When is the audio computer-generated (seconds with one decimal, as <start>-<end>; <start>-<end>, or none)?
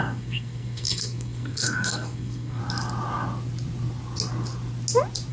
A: 0.0-2.6